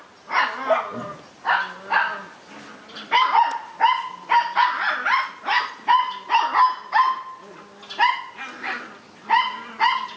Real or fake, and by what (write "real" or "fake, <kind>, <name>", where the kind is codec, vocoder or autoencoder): real